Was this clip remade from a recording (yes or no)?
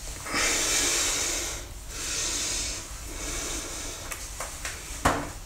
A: no